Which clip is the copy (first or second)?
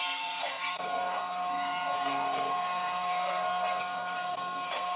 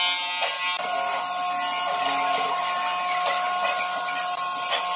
first